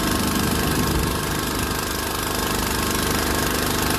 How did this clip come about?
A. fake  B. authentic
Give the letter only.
B